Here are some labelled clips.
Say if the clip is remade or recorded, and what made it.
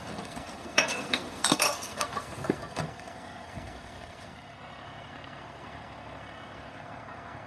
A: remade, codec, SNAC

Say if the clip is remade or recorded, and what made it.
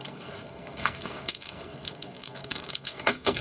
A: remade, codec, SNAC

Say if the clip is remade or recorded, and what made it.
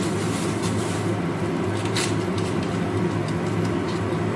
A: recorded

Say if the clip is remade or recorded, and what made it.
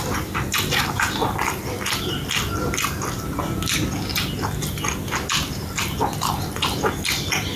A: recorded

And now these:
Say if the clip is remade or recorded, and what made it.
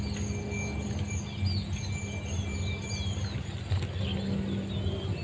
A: recorded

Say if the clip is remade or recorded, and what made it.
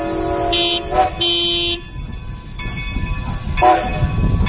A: recorded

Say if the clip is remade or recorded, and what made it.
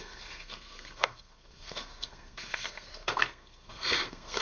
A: remade, codec, SNAC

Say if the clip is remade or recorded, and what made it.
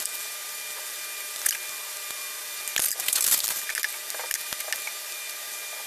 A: recorded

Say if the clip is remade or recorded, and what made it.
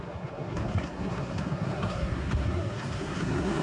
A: remade, codec, SNAC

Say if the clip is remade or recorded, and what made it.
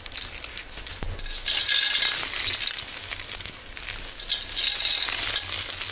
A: recorded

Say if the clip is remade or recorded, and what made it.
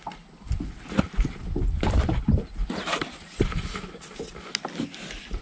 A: recorded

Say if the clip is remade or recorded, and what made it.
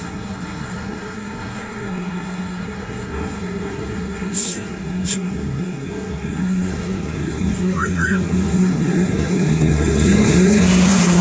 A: remade, codec, SNAC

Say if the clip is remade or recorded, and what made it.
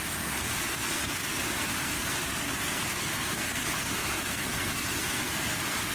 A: remade, codec, SNAC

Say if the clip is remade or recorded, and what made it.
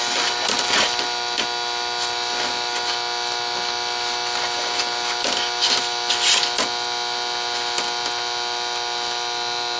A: recorded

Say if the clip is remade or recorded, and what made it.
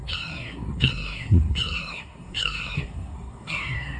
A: remade, codec, SNAC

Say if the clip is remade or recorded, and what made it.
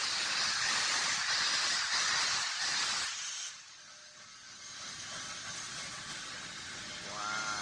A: recorded